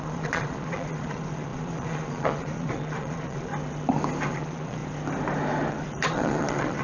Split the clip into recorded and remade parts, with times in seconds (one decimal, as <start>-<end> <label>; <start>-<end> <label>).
0.0-3.5 remade; 3.5-4.3 recorded; 4.3-4.8 remade; 4.8-5.7 recorded; 5.7-6.8 remade